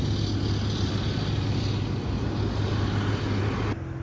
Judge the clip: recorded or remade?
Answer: recorded